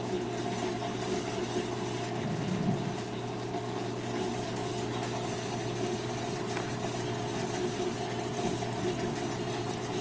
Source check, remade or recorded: recorded